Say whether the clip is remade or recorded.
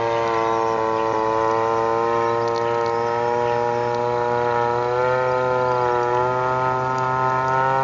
recorded